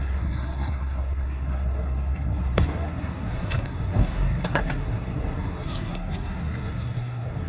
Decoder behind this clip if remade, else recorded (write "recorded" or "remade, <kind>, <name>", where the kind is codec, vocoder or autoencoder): remade, codec, SNAC